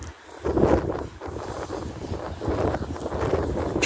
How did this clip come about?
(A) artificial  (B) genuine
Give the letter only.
B